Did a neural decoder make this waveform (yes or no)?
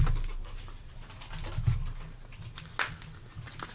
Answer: no